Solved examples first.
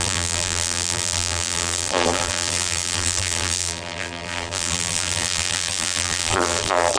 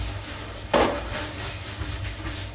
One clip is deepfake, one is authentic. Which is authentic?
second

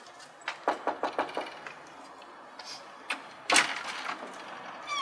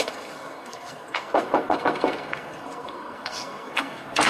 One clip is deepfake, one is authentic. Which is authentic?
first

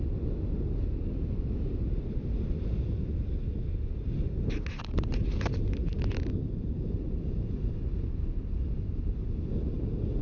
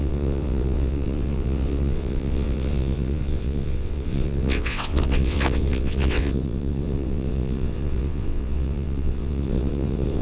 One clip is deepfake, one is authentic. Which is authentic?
first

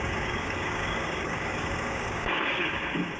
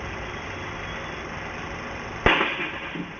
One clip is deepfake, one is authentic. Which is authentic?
second